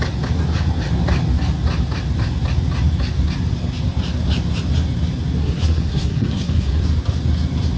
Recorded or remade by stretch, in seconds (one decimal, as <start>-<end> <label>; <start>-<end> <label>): 0.0-5.4 recorded; 5.4-6.8 remade; 6.8-7.8 recorded

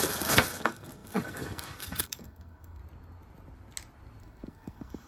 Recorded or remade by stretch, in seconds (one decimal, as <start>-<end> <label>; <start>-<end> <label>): 0.0-2.8 remade; 2.8-4.2 recorded; 4.2-5.1 remade

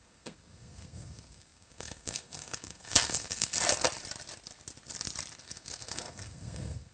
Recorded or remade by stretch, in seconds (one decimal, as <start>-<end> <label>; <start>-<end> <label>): 0.0-3.5 remade; 3.5-5.4 recorded; 5.4-6.9 remade

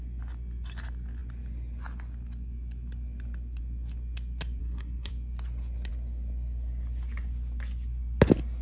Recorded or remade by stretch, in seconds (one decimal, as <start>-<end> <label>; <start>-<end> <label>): 0.0-4.6 recorded; 4.6-5.1 remade; 5.1-8.6 recorded

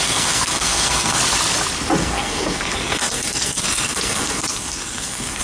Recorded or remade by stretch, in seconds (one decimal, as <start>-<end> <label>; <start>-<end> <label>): 0.0-1.2 remade; 1.2-2.0 recorded; 2.0-5.4 remade

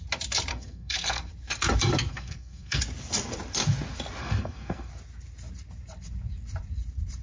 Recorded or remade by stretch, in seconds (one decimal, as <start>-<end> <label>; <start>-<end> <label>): 0.0-0.5 recorded; 0.5-1.3 remade; 1.3-2.1 recorded; 2.1-2.8 remade; 2.8-4.2 recorded; 4.2-4.9 remade; 4.9-7.2 recorded

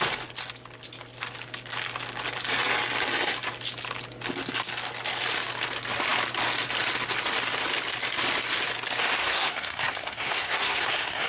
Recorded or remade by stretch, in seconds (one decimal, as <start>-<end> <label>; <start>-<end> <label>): 0.0-9.2 recorded; 9.2-11.3 remade